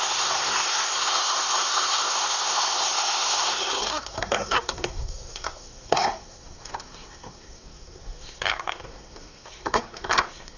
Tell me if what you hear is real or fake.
fake